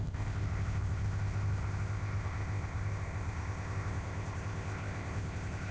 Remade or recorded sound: remade